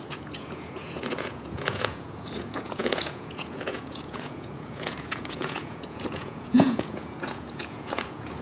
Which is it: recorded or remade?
remade